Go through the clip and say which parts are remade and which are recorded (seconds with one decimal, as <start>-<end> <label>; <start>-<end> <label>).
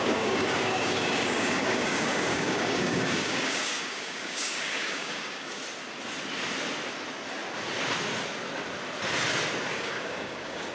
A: 0.0-5.6 remade; 5.6-9.7 recorded; 9.7-10.7 remade